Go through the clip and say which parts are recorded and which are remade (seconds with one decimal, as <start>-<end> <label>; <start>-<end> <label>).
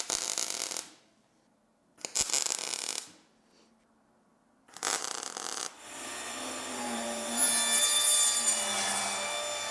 0.0-4.3 recorded; 4.3-5.6 remade; 5.6-9.7 recorded